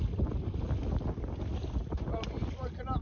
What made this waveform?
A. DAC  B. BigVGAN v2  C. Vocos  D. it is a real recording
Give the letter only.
D